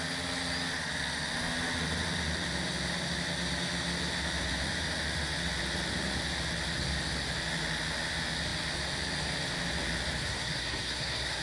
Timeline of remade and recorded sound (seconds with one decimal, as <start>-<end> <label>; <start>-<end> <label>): 0.0-10.2 recorded; 10.2-11.4 remade